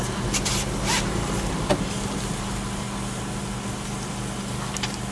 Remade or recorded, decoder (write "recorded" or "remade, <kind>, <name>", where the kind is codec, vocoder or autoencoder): recorded